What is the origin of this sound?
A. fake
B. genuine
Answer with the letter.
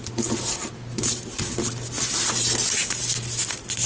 B